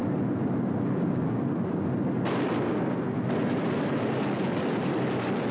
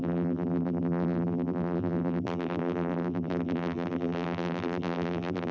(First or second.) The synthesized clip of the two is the second